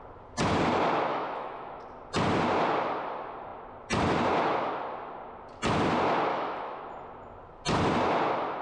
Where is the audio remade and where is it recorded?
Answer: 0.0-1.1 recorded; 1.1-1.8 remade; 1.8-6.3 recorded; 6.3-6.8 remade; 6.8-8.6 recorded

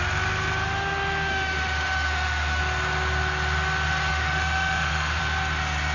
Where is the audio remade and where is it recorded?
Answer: 0.0-1.3 recorded; 1.3-2.6 remade; 2.6-4.1 recorded; 4.1-5.2 remade; 5.2-5.9 recorded

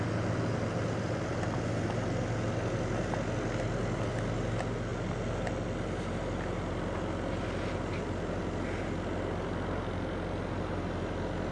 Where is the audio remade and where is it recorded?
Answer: 0.0-11.5 recorded

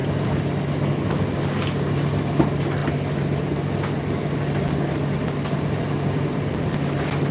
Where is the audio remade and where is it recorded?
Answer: 0.0-7.3 recorded

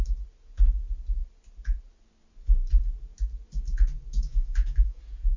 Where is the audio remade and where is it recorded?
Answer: 0.0-4.3 recorded; 4.3-5.0 remade; 5.0-5.4 recorded